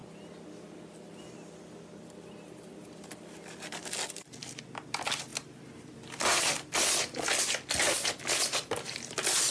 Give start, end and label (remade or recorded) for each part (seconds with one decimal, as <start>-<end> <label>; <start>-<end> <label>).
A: 0.0-9.5 recorded